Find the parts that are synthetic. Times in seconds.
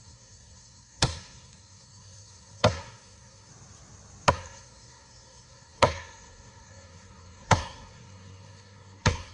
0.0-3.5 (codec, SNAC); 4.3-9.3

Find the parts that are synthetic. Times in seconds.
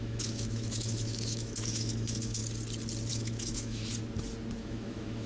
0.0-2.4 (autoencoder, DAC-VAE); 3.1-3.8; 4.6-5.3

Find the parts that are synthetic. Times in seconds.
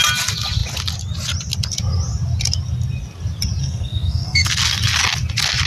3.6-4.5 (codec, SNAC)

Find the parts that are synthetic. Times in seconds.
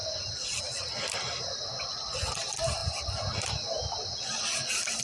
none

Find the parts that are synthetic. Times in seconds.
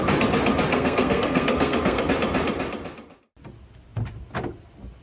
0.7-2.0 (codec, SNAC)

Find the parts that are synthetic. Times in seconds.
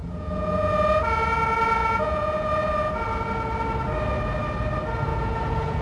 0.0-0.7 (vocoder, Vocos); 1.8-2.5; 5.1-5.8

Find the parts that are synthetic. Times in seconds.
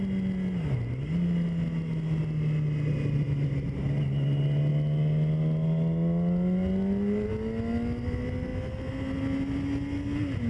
none